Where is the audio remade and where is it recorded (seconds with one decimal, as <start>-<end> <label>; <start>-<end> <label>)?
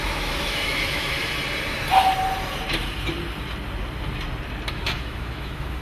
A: 0.0-1.2 remade; 1.2-4.7 recorded; 4.7-5.8 remade